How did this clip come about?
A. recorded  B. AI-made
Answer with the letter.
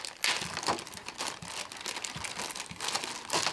A